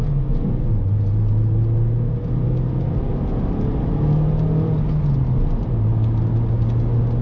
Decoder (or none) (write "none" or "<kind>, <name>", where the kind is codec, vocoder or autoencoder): none